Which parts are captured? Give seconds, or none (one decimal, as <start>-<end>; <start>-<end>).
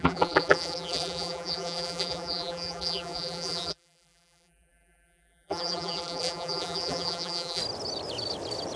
7.6-8.8